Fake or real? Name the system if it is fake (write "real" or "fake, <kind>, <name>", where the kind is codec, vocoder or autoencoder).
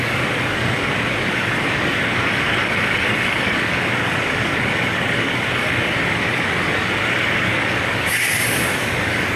fake, codec, DAC